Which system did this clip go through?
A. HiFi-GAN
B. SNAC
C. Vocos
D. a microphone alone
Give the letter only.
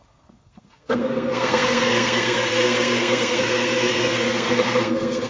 B